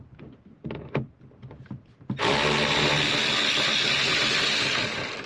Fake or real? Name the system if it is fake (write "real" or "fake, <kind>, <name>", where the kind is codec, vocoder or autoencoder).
real